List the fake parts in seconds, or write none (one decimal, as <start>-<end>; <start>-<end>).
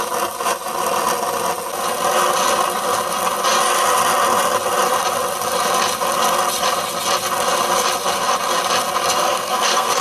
9.2-10.0